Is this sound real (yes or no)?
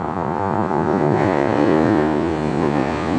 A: no